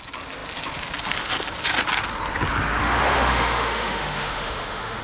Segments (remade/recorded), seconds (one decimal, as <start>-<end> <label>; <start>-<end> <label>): 0.0-2.8 recorded; 2.8-5.0 remade